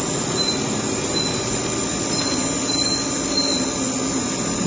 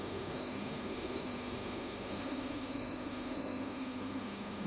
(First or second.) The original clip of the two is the first